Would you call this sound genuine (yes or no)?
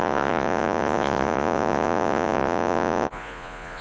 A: no